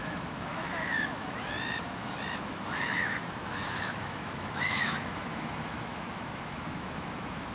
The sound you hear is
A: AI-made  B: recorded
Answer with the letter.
A